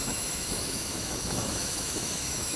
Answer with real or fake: fake